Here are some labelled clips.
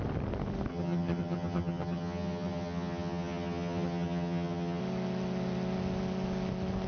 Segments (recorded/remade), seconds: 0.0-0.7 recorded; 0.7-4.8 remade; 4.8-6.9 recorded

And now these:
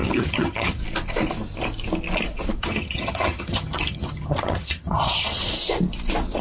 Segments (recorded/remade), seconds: 0.0-0.8 remade; 0.8-2.6 recorded; 2.6-5.5 remade; 5.5-6.4 recorded

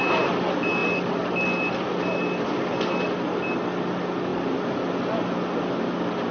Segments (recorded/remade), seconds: 0.0-6.3 recorded

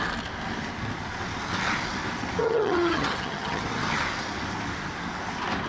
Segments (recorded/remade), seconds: 0.0-2.4 recorded; 2.4-3.8 remade; 3.8-5.7 recorded

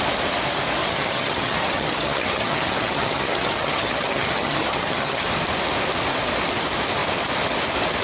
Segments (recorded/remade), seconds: 0.0-0.8 recorded; 0.8-5.3 remade; 5.3-8.0 recorded

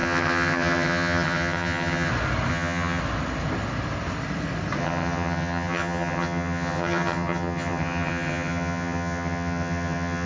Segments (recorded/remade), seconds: 0.0-2.1 remade; 2.1-2.5 recorded; 2.5-3.0 remade; 3.0-4.8 recorded; 4.8-10.3 remade

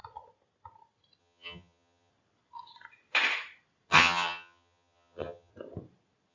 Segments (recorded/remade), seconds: 0.0-1.2 recorded; 1.2-2.1 remade; 2.1-3.9 recorded; 3.9-5.5 remade; 5.5-6.3 recorded